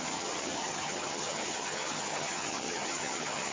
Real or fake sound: fake